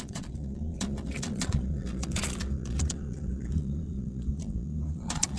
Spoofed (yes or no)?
yes